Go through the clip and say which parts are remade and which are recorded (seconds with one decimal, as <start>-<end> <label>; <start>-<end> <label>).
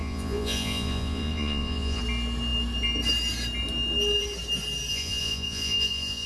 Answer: 0.0-2.0 remade; 2.0-4.9 recorded; 4.9-6.3 remade